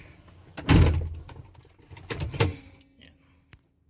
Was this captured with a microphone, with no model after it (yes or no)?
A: yes